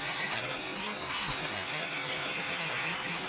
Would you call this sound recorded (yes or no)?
no